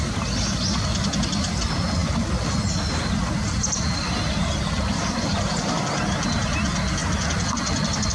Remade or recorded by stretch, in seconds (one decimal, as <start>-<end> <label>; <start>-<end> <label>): 0.0-8.1 recorded